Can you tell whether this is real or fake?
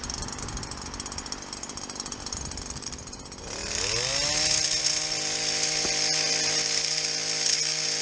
real